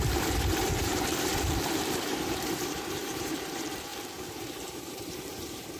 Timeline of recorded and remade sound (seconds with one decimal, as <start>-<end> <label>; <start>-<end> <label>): 0.0-3.9 remade; 3.9-4.4 recorded; 4.4-5.8 remade